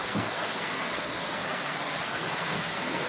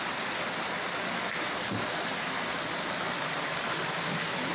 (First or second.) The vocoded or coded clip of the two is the first